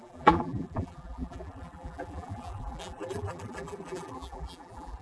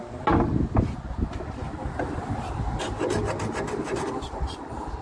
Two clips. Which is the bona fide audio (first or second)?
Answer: second